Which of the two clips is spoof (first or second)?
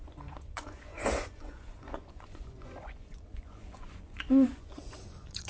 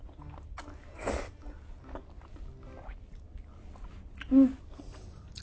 first